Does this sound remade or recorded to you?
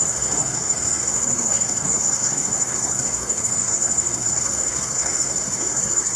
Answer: remade